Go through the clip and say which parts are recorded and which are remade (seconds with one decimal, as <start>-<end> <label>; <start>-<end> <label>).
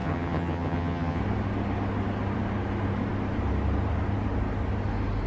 0.0-1.2 remade; 1.2-5.3 recorded